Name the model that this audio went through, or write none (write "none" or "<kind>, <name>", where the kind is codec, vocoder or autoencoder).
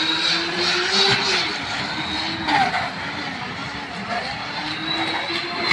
none